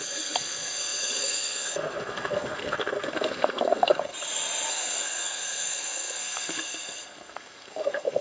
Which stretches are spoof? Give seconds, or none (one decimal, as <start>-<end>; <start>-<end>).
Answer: 0.0-4.1; 4.7-8.2